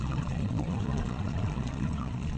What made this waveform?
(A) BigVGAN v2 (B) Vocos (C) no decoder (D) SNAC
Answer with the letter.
B